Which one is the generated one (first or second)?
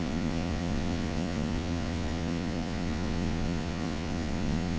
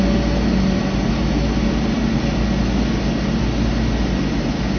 first